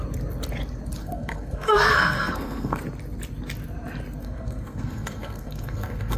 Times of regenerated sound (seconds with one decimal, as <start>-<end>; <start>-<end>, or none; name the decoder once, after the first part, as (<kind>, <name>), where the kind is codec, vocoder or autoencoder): 1.0-2.8 (codec, SNAC); 4.2-6.2